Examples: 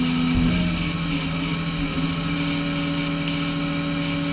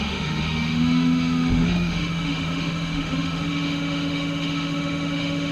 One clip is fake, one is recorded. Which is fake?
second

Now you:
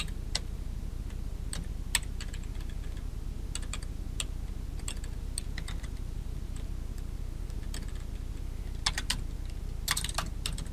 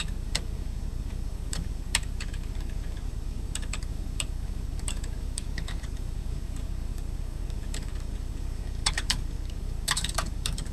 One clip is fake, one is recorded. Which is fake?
second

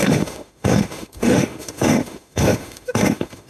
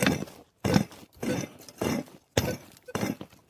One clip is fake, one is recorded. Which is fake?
first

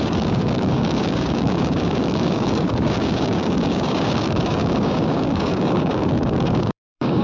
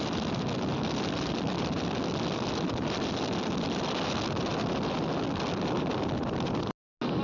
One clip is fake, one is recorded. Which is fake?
first